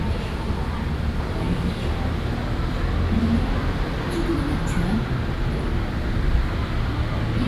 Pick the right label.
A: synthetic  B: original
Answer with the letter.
B